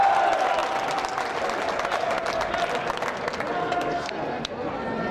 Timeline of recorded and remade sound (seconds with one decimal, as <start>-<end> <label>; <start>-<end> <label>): 0.0-3.6 recorded; 3.6-4.1 remade; 4.1-5.1 recorded